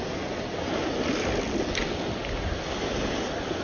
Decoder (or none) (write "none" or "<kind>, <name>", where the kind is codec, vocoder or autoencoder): none